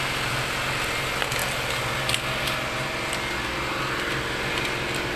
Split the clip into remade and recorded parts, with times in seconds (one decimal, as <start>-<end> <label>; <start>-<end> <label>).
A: 0.0-5.2 recorded